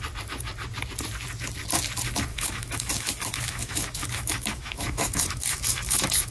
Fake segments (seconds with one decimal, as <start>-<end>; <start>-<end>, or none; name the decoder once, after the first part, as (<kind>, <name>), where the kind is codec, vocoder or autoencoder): 2.3-6.3 (autoencoder, DAC-VAE)